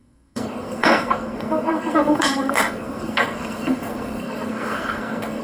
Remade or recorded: remade